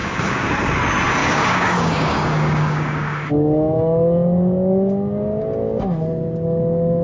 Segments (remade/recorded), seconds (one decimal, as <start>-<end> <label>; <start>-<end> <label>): 0.0-0.5 remade; 0.5-1.2 recorded; 1.2-5.4 remade; 5.4-7.0 recorded